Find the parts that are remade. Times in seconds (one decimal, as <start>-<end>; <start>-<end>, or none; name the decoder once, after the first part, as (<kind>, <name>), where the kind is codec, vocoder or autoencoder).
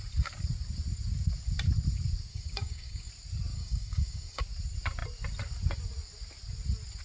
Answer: 2.3-3.1 (codec, DAC); 3.5-4.4